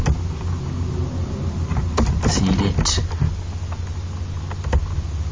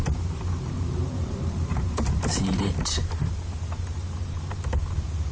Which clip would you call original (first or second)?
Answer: first